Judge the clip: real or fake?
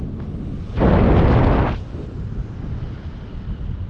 real